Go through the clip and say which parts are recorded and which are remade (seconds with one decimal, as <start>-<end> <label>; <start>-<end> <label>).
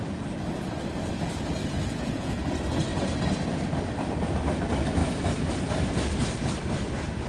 0.0-1.6 recorded; 1.6-2.3 remade; 2.3-7.3 recorded